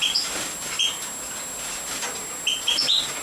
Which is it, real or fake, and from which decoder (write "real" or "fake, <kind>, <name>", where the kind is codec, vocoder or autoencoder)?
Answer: real